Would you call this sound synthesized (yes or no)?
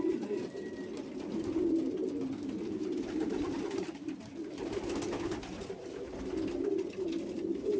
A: no